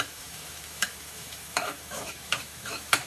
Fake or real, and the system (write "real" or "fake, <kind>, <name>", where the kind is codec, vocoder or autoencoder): fake, autoencoder, DAC-VAE